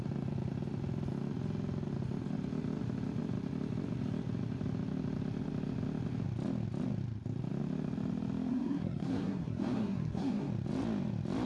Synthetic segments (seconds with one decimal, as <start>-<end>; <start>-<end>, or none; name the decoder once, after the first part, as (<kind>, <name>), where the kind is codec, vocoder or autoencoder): 8.5-10.5 (codec, SNAC)